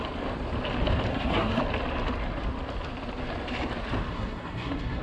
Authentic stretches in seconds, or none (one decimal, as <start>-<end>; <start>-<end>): 0.0-1.1; 1.6-4.1